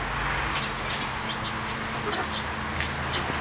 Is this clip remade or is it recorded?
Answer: recorded